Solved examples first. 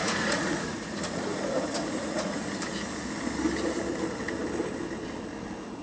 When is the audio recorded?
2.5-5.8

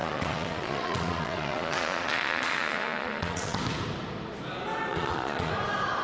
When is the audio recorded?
3.6-4.9; 5.5-6.0

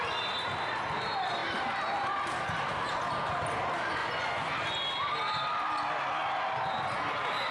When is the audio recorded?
0.0-4.0; 4.5-7.5